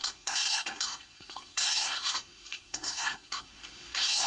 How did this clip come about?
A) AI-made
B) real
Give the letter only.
A